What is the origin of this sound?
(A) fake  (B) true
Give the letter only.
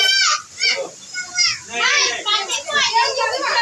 B